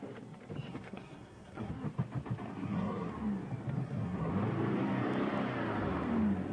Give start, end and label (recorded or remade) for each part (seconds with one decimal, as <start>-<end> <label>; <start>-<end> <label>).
0.0-0.7 recorded; 0.7-1.7 remade; 1.7-2.5 recorded; 2.5-3.1 remade; 3.1-3.8 recorded; 3.8-4.3 remade; 4.3-6.5 recorded